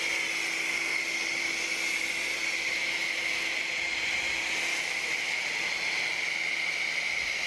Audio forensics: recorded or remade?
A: recorded